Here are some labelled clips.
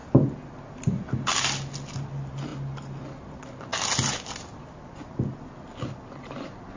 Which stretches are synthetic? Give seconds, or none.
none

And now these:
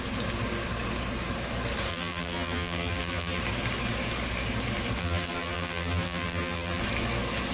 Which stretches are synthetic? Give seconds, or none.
1.9-3.4 (vocoder, BigVGAN v2); 5.0-6.8

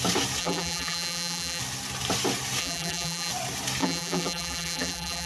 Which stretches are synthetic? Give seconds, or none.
0.4-1.6 (vocoder, BigVGAN v2); 2.6-3.3; 3.8-5.3

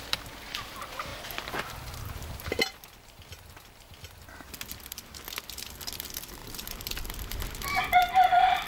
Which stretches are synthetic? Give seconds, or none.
0.0-1.1 (vocoder, BigVGAN v2); 4.7-8.7

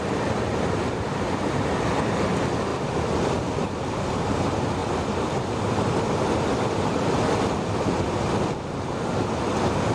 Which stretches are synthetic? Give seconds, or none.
0.0-9.9 (vocoder, BigVGAN v2)

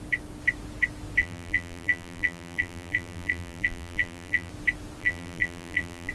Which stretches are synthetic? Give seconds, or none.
1.2-4.5 (vocoder, BigVGAN v2); 5.0-6.1

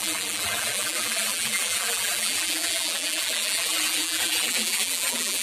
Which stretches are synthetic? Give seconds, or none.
0.0-5.4 (vocoder, BigVGAN v2)

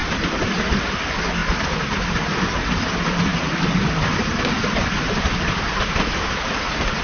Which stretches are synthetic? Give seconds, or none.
0.0-0.6 (vocoder, BigVGAN v2); 3.3-7.0